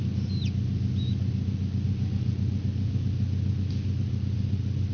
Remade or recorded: recorded